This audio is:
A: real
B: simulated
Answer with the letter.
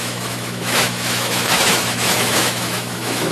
B